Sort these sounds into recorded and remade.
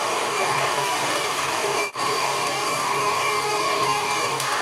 remade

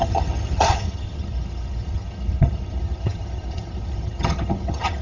remade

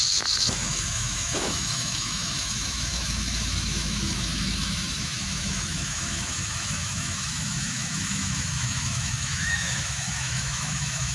remade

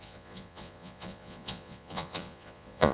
remade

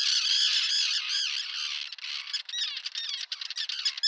recorded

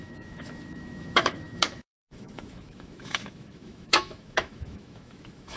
remade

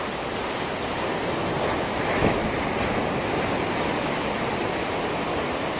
recorded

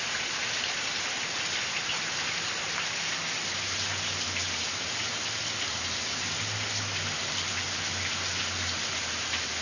recorded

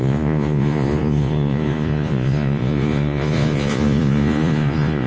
remade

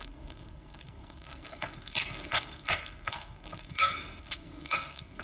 remade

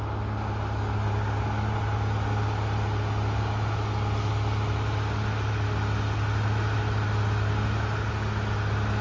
recorded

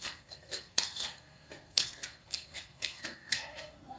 remade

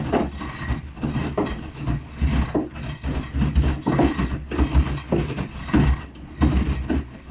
recorded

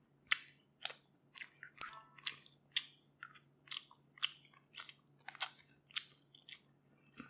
recorded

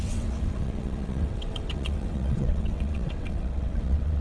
remade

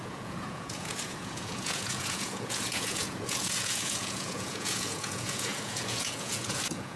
remade